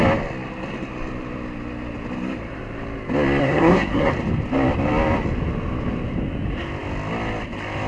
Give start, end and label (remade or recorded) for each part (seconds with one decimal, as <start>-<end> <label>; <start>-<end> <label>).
0.0-3.4 recorded; 3.4-4.1 remade; 4.1-7.9 recorded